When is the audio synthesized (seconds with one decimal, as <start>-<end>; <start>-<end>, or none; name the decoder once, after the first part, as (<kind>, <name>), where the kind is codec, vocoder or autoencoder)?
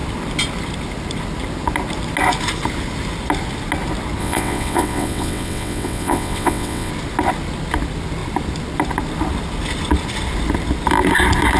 4.2-6.9 (vocoder, WaveNeXt)